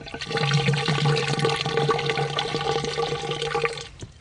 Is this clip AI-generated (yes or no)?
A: no